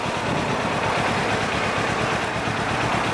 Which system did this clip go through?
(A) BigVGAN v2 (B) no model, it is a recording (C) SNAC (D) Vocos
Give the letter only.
B